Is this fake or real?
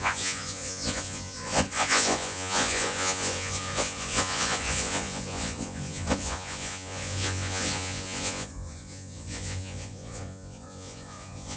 fake